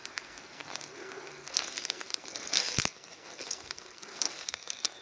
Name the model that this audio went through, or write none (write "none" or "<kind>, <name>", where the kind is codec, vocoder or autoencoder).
codec, SNAC